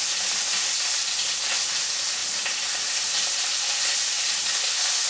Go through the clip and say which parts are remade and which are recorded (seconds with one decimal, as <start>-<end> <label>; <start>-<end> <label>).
0.0-5.1 recorded